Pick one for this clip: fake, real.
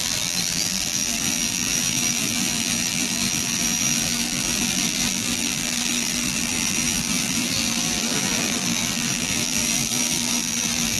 fake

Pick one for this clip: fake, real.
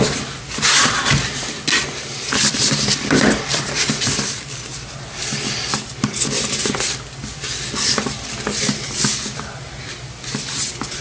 fake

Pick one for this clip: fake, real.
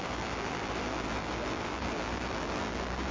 fake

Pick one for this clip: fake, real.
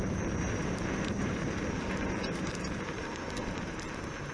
fake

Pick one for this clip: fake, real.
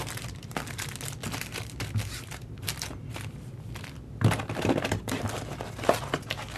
real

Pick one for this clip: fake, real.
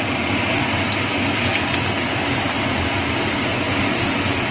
real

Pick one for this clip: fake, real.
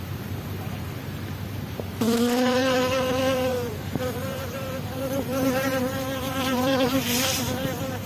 fake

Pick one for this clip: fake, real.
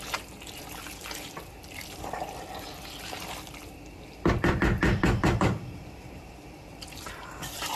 fake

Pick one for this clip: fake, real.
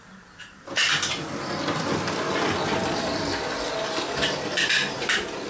fake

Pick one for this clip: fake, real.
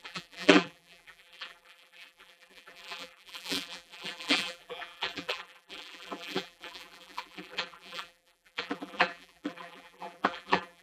fake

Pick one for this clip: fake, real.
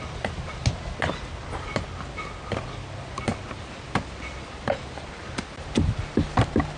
real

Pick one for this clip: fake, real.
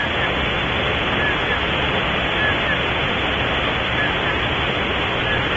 real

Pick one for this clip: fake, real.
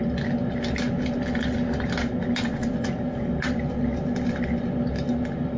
real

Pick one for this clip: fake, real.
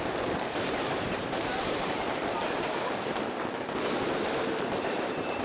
fake